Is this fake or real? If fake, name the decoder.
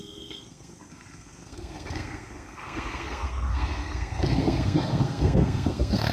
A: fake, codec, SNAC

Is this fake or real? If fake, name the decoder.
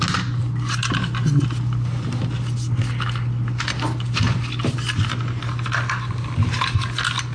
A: real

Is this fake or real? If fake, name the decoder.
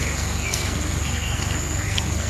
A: fake, codec, SNAC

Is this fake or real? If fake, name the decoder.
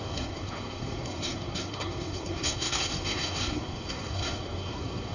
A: fake, codec, SNAC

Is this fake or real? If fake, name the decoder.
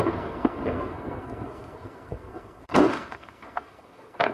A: fake, codec, SNAC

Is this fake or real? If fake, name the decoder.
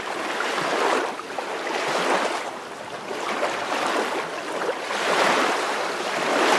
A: real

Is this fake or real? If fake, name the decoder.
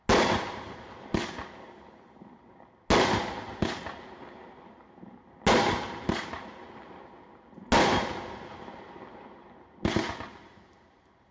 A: real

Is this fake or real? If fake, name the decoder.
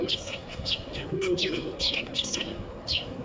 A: fake, codec, SNAC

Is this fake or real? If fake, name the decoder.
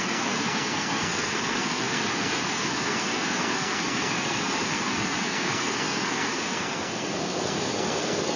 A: fake, codec, SNAC